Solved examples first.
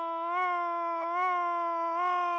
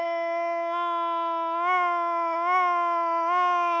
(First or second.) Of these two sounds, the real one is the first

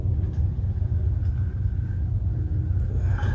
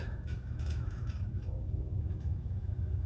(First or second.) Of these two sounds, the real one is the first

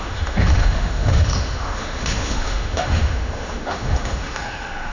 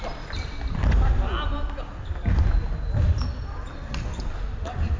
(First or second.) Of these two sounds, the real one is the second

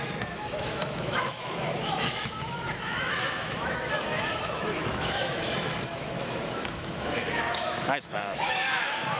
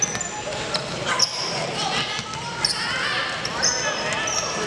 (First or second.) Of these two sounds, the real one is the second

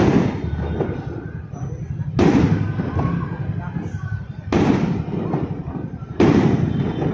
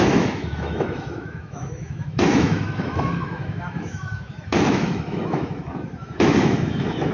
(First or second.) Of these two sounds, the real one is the first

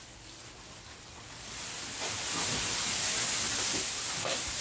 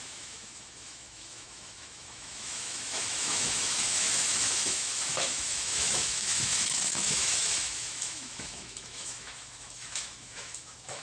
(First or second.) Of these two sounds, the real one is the first